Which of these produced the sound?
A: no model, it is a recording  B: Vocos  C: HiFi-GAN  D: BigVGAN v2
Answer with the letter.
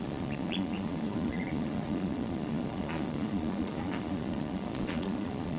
B